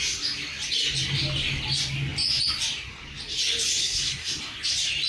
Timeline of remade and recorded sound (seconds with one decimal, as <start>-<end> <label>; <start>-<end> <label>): 0.0-3.8 recorded; 3.8-4.4 remade; 4.4-5.1 recorded